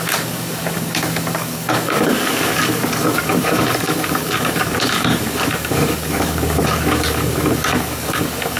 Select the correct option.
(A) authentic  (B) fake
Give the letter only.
B